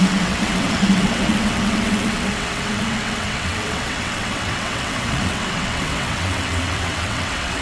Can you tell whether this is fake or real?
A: fake